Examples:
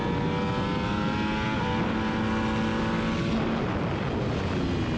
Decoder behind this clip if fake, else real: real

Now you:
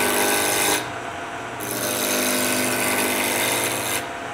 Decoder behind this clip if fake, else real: real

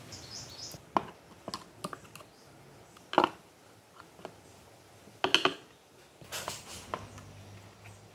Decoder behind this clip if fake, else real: real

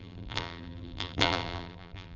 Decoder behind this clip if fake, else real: fake, vocoder, BigVGAN v2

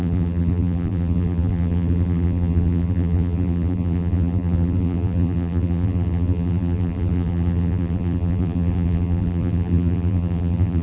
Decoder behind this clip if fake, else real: fake, vocoder, BigVGAN v2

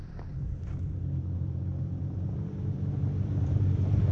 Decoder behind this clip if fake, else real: fake, vocoder, BigVGAN v2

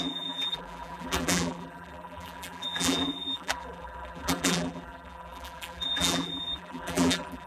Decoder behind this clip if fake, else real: fake, vocoder, BigVGAN v2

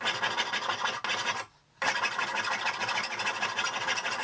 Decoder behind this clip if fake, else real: real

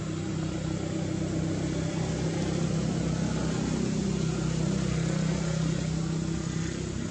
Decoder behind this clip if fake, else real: real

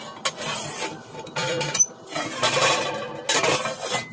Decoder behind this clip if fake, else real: real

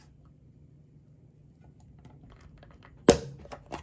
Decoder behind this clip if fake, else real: real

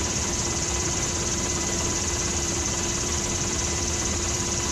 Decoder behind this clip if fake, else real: fake, vocoder, BigVGAN v2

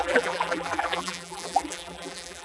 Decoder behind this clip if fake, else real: fake, vocoder, BigVGAN v2